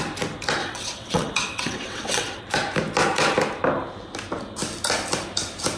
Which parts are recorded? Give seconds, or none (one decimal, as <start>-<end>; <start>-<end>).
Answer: 0.0-0.6; 2.4-5.8